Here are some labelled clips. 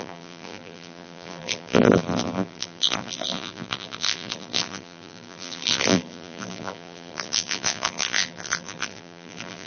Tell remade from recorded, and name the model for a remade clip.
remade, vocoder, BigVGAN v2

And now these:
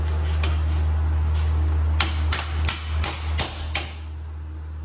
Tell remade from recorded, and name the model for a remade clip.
recorded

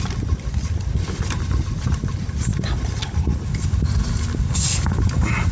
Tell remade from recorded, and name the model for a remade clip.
recorded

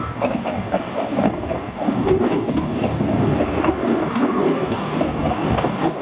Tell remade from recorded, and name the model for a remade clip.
remade, codec, DAC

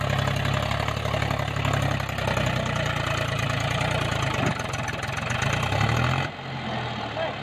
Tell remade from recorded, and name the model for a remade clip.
recorded